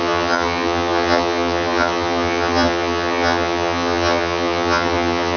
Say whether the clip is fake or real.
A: fake